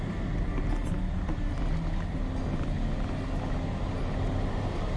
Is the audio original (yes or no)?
yes